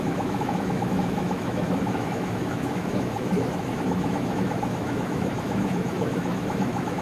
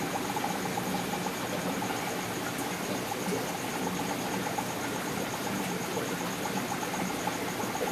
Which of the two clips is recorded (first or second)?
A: second